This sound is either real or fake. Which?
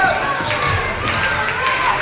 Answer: real